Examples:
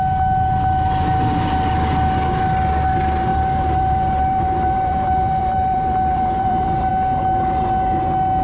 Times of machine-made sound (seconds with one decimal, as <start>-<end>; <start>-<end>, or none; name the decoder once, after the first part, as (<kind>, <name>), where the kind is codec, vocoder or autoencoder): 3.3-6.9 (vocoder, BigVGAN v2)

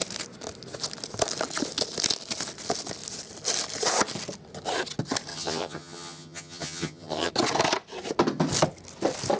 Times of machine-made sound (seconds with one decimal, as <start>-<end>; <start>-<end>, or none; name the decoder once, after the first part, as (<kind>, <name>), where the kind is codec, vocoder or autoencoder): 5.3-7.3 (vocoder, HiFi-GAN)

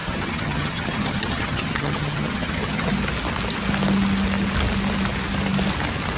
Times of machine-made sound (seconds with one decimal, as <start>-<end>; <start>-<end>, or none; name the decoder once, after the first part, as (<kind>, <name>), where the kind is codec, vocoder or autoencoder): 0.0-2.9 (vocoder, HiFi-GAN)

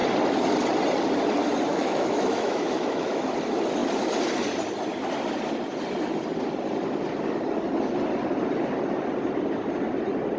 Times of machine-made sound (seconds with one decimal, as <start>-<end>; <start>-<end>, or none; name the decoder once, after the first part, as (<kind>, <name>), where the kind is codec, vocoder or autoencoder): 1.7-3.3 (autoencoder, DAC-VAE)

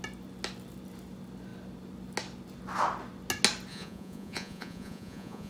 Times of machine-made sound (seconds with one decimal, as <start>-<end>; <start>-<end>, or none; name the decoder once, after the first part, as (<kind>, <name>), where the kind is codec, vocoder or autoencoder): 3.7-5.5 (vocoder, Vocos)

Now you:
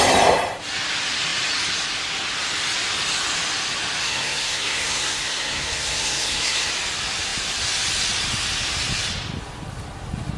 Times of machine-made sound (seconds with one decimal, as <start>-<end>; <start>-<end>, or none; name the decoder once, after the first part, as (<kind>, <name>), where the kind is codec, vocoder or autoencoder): 4.0-6.7 (codec, SNAC)